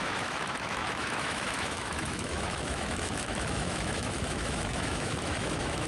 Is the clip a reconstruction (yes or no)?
yes